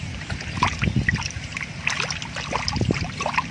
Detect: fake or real real